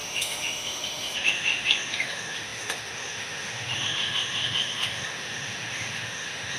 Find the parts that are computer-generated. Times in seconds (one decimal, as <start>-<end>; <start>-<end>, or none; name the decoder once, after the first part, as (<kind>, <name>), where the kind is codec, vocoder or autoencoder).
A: 0.0-6.6 (autoencoder, DAC-VAE)